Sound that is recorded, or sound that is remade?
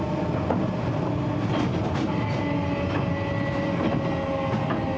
recorded